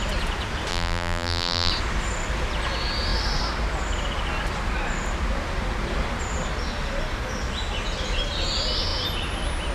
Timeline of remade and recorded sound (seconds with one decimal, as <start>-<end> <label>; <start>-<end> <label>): 0.0-0.7 recorded; 0.7-1.7 remade; 1.7-9.7 recorded